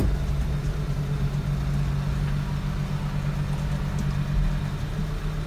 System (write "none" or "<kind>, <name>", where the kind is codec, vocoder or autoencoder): none